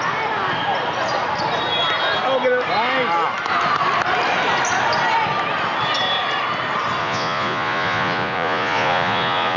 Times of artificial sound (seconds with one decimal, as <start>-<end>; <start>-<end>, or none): 7.0-9.6